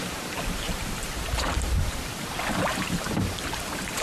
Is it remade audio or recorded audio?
remade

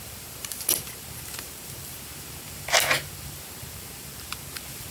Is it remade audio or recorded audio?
remade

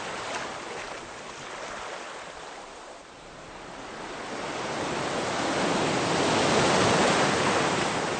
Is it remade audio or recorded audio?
recorded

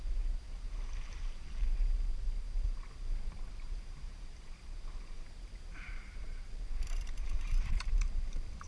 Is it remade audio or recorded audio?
remade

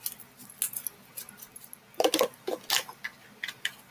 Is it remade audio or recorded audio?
recorded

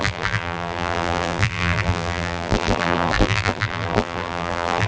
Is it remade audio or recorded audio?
remade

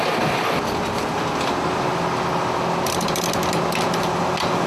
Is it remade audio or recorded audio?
recorded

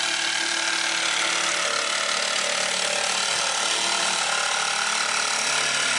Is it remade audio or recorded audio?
recorded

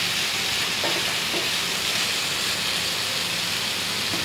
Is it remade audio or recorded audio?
recorded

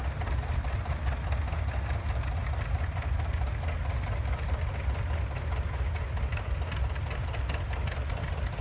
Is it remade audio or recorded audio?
recorded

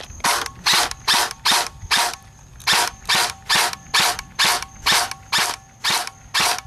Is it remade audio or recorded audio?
recorded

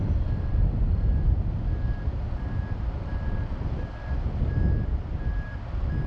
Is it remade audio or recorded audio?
recorded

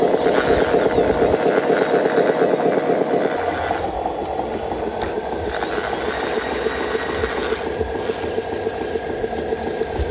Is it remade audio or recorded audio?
recorded